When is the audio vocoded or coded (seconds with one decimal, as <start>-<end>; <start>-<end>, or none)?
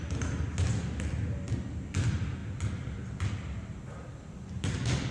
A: none